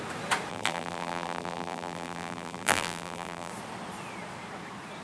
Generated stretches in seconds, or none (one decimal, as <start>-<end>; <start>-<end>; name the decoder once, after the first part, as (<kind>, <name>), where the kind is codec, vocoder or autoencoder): 0.5-3.5 (vocoder, BigVGAN v2)